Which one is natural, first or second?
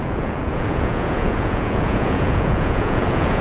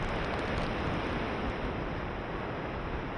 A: second